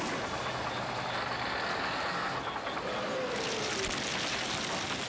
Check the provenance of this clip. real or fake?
real